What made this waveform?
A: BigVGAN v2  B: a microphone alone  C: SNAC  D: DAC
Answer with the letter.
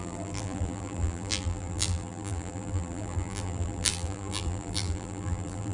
A